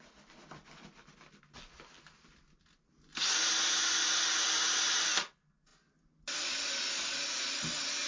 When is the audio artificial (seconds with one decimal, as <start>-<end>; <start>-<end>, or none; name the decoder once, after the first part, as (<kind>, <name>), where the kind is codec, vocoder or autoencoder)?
none